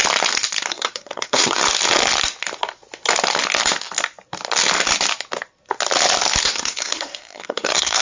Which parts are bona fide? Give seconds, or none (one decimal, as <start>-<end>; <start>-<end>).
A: 0.0-0.7; 1.6-6.4